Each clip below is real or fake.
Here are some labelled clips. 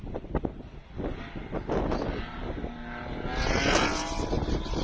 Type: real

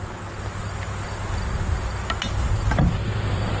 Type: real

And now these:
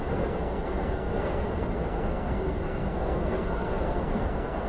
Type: fake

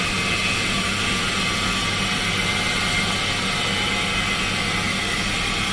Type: real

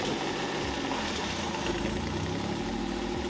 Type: real